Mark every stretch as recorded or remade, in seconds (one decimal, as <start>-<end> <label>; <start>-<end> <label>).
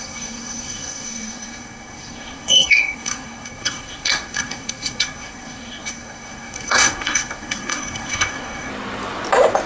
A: 0.0-8.7 remade; 8.7-9.7 recorded